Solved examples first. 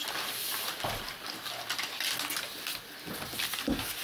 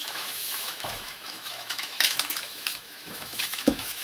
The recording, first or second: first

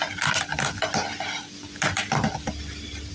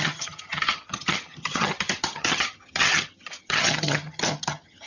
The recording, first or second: first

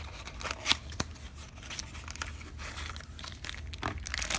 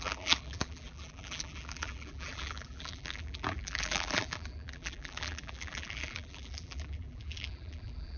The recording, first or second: first